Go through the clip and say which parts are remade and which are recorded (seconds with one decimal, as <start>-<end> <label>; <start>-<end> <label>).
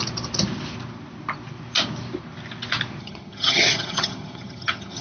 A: 0.0-3.0 recorded; 3.0-5.0 remade